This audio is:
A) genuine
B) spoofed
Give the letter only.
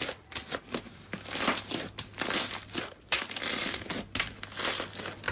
A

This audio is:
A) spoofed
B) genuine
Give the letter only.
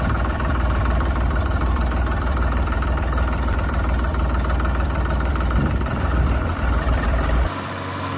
A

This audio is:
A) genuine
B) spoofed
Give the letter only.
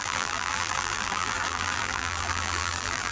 B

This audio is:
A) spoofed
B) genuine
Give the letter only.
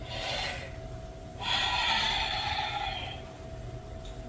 B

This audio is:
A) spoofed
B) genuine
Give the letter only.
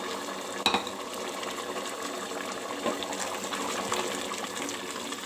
B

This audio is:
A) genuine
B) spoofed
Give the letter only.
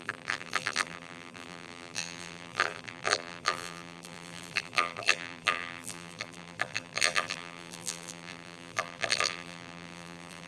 B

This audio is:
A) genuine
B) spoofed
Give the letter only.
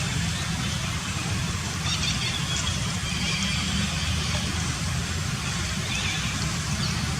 B